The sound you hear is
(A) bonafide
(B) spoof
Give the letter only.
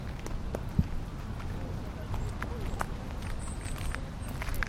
A